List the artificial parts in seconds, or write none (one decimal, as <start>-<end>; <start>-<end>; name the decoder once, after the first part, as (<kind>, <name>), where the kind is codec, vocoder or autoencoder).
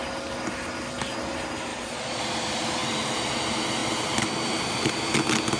1.7-2.2 (vocoder, Vocos)